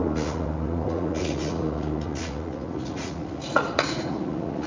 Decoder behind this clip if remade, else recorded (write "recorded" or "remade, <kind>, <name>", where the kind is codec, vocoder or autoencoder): remade, vocoder, Vocos